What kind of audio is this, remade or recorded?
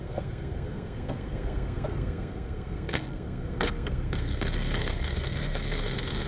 remade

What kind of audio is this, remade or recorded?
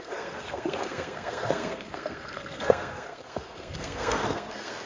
remade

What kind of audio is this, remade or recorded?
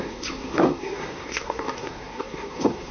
remade